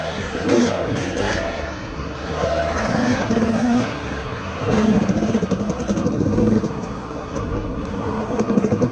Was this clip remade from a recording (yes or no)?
yes